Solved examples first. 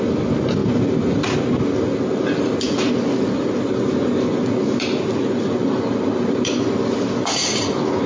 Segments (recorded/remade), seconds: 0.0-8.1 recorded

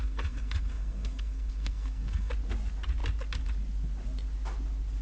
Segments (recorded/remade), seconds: 0.0-2.3 remade; 2.3-5.0 recorded

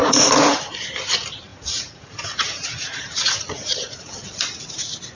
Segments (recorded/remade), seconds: 0.0-0.7 remade; 0.7-1.5 recorded; 1.5-4.1 remade; 4.1-5.1 recorded

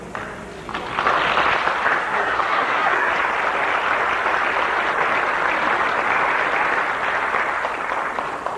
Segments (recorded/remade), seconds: 0.0-2.0 recorded; 2.0-3.1 remade; 3.1-8.6 recorded